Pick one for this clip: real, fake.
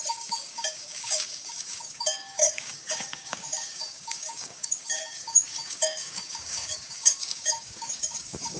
fake